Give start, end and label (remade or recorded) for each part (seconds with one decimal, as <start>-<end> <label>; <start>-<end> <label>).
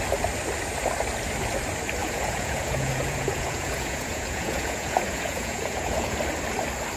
0.0-2.0 recorded; 2.0-6.2 remade; 6.2-7.0 recorded